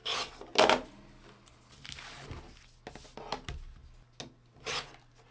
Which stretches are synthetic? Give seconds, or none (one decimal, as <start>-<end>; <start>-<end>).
none